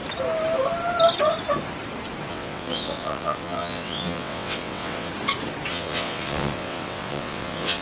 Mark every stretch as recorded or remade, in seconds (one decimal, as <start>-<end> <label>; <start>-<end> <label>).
0.0-2.3 recorded; 2.3-5.1 remade; 5.1-5.7 recorded; 5.7-7.8 remade

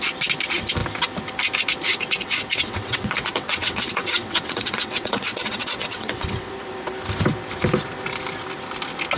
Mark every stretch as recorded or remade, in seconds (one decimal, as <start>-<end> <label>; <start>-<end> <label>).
0.0-1.9 recorded; 1.9-6.5 remade; 6.5-9.2 recorded